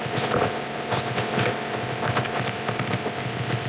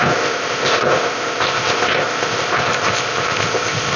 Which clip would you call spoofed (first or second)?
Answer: second